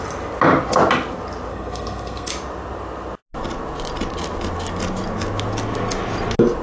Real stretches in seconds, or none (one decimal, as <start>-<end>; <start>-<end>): 0.0-1.5; 2.3-6.6